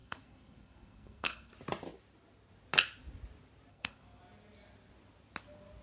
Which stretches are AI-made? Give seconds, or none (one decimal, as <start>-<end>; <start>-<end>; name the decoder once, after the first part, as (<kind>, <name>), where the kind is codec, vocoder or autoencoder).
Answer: 0.0-1.5 (codec, SNAC); 3.7-4.2